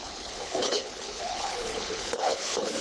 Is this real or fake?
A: fake